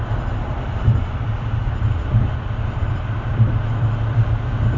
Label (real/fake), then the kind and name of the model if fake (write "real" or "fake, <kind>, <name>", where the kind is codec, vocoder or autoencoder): fake, vocoder, BigVGAN v2